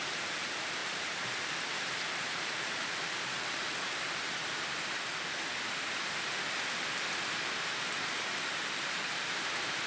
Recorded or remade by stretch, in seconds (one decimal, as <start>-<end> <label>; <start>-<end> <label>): 0.0-4.4 remade; 4.4-8.1 recorded; 8.1-9.9 remade